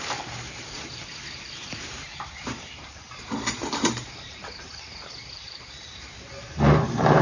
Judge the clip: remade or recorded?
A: remade